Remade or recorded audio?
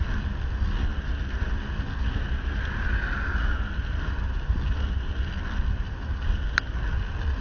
recorded